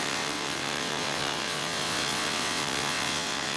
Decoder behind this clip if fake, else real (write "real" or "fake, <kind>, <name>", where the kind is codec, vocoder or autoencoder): fake, vocoder, WaveNeXt